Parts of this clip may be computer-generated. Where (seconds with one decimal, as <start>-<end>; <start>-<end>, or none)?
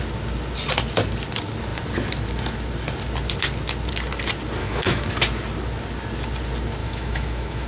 4.6-5.1; 6.8-7.7